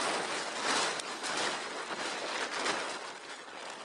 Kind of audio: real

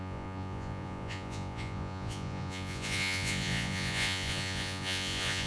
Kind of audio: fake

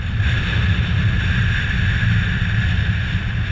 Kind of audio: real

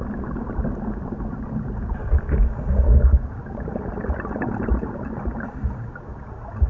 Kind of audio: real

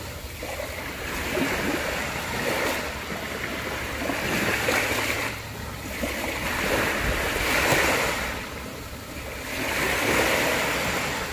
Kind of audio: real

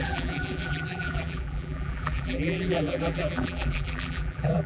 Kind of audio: fake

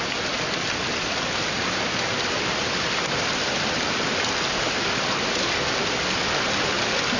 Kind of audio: real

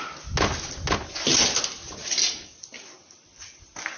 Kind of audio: real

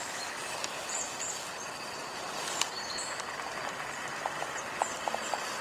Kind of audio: real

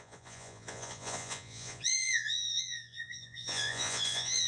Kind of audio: fake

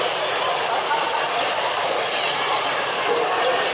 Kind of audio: real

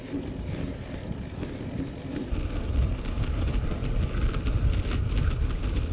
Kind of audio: real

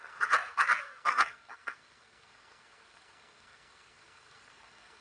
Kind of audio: fake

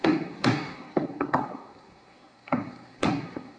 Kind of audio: fake